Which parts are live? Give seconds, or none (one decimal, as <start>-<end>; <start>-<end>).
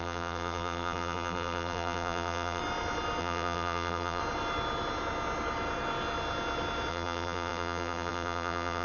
2.6-3.2; 4.2-6.9